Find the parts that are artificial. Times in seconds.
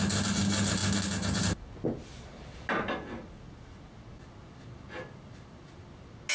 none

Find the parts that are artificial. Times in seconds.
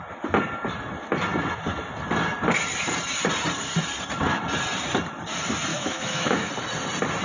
5.7-6.5